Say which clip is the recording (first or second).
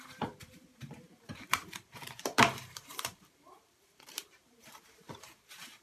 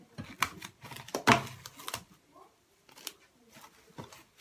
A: second